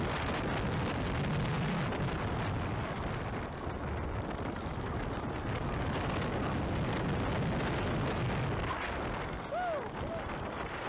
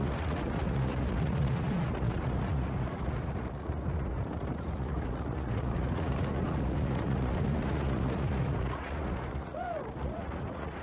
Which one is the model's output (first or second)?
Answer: second